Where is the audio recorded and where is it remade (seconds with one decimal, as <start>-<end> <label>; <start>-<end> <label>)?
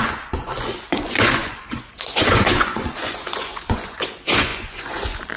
0.0-5.4 remade